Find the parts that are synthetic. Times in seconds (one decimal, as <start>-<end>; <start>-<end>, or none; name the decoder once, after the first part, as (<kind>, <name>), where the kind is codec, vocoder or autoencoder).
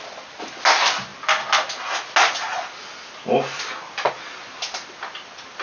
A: none